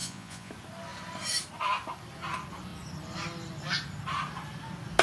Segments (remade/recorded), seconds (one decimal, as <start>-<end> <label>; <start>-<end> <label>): 0.0-0.5 remade; 0.5-5.0 recorded